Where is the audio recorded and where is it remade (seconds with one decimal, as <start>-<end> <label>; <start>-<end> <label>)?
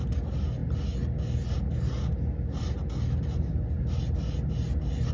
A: 0.0-5.1 recorded